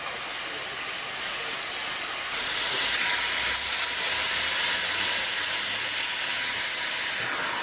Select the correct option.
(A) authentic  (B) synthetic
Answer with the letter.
A